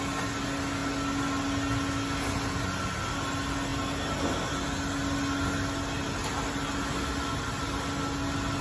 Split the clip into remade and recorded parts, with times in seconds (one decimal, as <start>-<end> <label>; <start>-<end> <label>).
0.0-8.6 recorded